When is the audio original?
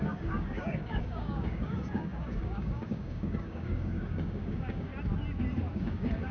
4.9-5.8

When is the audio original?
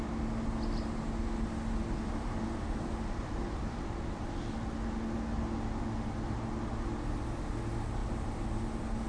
0.0-1.8; 3.9-8.0; 8.6-9.1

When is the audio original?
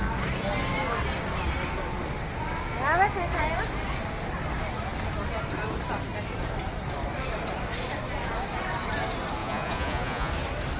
0.0-9.4; 10.3-10.8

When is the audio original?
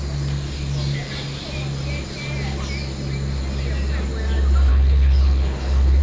0.0-4.7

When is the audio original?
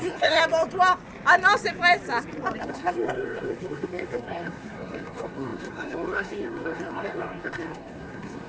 0.4-2.6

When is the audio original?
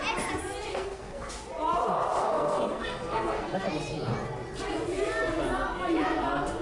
0.0-0.7; 1.3-2.2; 3.7-6.6